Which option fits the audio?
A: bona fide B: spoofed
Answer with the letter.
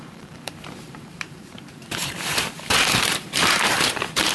B